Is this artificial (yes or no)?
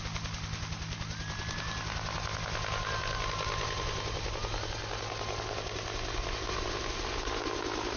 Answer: no